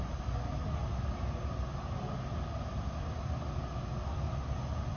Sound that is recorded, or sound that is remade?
recorded